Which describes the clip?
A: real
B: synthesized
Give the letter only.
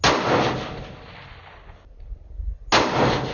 A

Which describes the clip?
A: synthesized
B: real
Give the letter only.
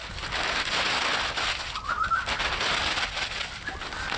B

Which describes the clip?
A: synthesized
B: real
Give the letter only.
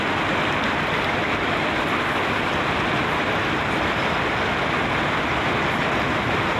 B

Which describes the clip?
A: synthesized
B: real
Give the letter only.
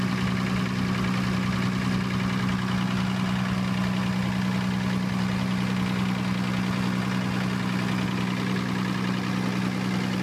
B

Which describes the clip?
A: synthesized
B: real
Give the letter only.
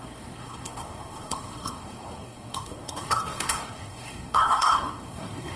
A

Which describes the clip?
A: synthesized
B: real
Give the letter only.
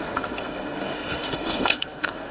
A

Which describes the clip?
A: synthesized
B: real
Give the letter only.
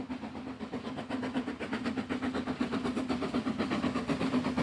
B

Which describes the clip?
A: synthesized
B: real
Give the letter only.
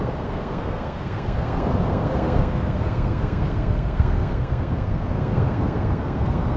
A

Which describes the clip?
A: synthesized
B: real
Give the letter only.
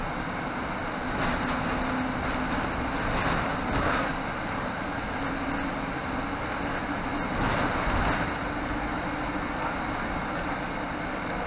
B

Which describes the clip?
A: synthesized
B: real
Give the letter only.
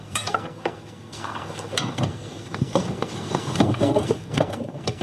A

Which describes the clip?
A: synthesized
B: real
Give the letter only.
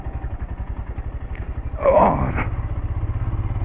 B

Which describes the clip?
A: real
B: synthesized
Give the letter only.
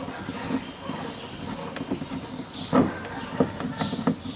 A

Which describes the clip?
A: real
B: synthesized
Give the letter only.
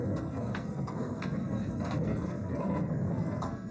B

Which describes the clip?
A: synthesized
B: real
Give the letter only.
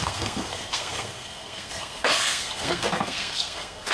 A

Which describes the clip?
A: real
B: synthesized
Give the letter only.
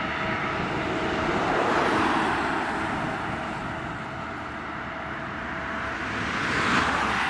A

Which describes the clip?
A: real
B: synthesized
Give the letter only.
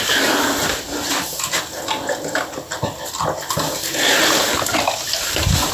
A